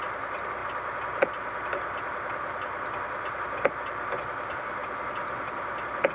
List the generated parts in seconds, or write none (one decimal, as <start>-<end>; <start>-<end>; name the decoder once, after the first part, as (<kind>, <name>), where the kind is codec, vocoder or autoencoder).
none